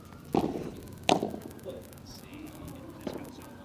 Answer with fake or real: real